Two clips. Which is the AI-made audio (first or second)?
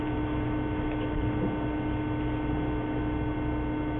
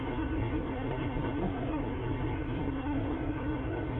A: second